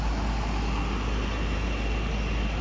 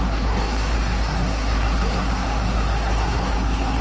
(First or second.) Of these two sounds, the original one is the first